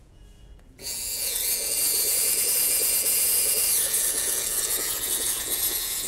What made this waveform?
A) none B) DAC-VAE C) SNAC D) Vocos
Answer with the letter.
D